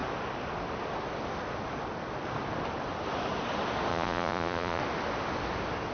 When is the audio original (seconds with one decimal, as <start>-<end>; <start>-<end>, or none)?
0.0-3.9; 4.8-5.9